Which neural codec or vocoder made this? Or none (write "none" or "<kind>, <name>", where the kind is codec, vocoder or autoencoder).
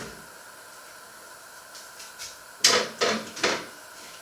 none